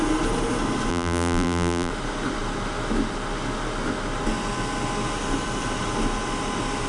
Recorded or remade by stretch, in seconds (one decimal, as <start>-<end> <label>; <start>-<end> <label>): 0.0-0.9 recorded; 0.9-1.9 remade; 1.9-6.9 recorded